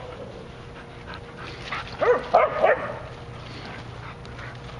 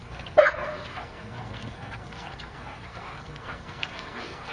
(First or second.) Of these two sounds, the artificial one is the second